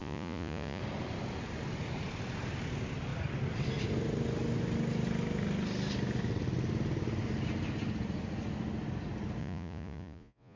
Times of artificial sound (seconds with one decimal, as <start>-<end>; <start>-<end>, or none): 0.0-0.8; 9.4-10.6